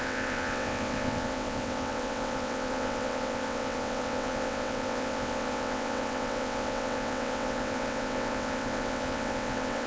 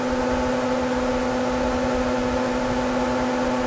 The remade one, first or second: first